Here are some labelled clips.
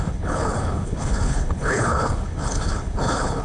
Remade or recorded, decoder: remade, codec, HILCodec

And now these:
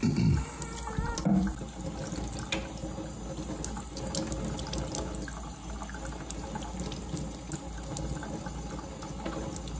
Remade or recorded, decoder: recorded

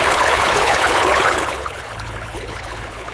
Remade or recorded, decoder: remade, codec, HILCodec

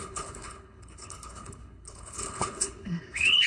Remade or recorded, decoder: remade, codec, HILCodec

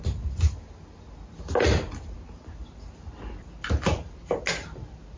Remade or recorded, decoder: recorded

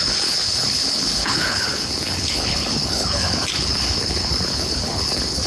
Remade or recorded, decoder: remade, codec, HILCodec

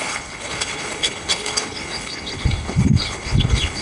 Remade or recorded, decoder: remade, codec, HILCodec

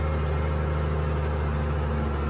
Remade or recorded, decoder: recorded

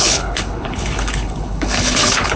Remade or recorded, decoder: remade, codec, HILCodec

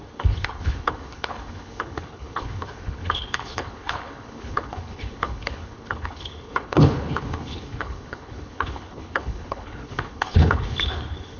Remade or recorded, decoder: remade, codec, HILCodec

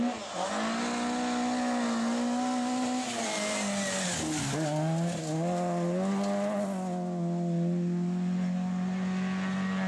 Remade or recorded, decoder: recorded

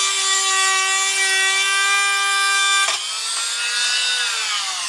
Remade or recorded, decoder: recorded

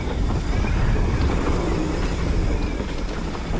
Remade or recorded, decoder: recorded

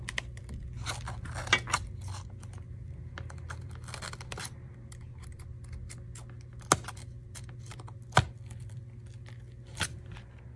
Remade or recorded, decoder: recorded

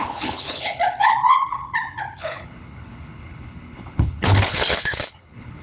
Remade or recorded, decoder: remade, codec, HILCodec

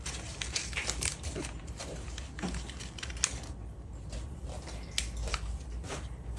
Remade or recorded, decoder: recorded